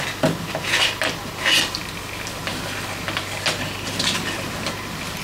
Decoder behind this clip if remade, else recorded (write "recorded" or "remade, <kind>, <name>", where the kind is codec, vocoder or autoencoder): recorded